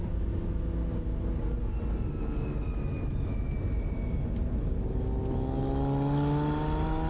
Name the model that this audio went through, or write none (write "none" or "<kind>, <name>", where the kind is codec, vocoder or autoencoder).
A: none